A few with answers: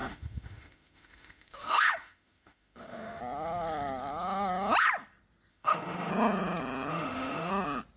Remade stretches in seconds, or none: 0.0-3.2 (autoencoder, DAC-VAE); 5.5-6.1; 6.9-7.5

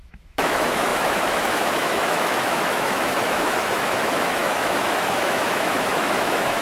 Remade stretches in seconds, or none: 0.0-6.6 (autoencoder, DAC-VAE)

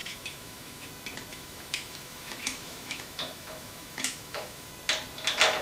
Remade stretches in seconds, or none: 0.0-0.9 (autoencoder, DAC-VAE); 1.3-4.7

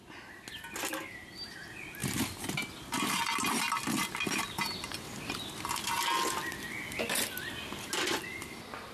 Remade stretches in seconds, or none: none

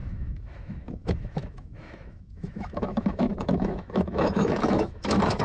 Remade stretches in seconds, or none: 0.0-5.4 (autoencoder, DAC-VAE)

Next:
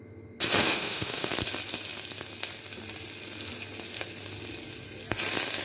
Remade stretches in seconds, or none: 0.6-1.3 (autoencoder, DAC-VAE)

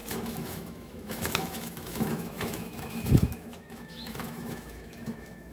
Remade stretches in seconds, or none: 0.0-5.5 (autoencoder, DAC-VAE)